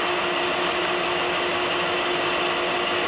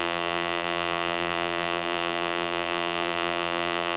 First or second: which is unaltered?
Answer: first